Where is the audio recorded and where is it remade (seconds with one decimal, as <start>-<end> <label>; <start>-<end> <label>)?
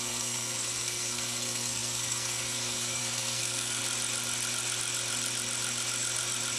0.0-3.8 remade; 3.8-6.6 recorded